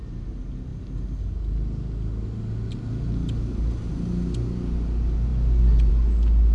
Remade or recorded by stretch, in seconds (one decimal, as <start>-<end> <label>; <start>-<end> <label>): 0.0-6.5 recorded